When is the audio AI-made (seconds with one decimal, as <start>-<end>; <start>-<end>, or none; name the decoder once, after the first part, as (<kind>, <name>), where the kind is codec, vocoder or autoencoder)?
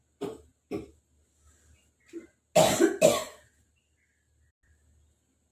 none